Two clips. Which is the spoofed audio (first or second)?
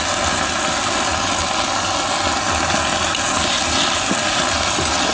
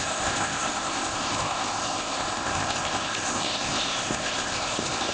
second